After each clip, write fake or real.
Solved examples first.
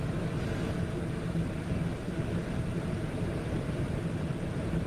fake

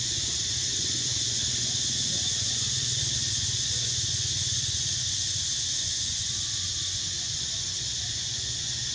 fake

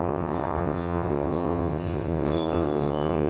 fake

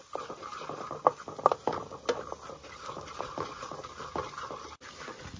real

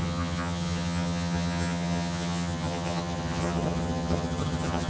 fake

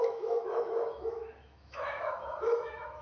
fake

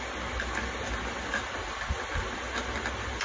real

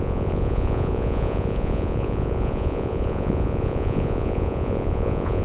fake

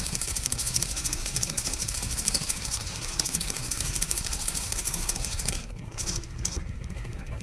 fake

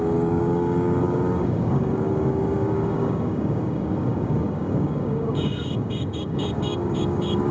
fake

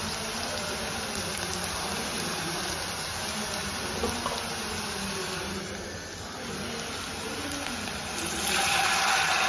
real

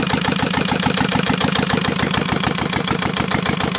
fake